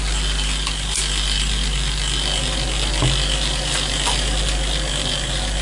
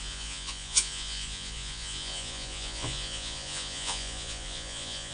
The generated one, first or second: second